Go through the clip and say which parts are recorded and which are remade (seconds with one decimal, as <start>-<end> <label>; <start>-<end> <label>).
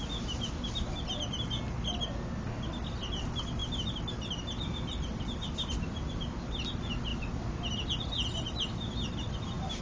0.0-9.8 recorded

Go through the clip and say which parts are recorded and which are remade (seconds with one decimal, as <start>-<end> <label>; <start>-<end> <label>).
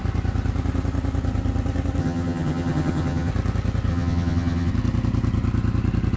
0.0-2.0 recorded; 2.0-3.3 remade; 3.3-3.9 recorded; 3.9-4.7 remade; 4.7-6.2 recorded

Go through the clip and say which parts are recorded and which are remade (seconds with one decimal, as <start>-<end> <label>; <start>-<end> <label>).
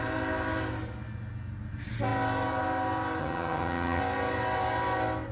0.0-3.2 recorded; 3.2-4.0 remade; 4.0-5.3 recorded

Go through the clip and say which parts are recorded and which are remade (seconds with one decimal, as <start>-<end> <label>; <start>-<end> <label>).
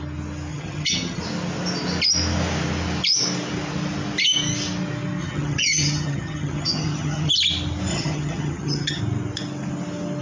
0.0-0.5 recorded; 0.5-1.2 remade; 1.2-5.2 recorded; 5.2-7.3 remade; 7.3-7.9 recorded; 7.9-9.0 remade; 9.0-10.2 recorded